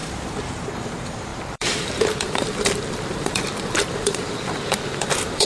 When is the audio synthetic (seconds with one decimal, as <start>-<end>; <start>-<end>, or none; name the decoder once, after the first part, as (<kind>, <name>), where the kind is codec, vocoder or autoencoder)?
0.6-5.5 (vocoder, BigVGAN v2)